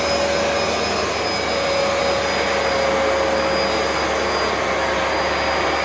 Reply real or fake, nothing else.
real